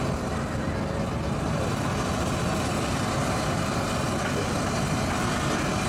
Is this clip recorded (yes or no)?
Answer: yes